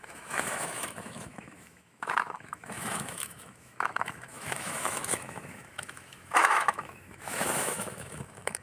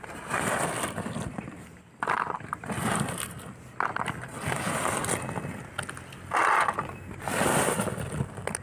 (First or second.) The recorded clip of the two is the second